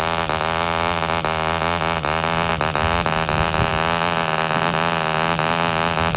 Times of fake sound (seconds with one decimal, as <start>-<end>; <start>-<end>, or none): none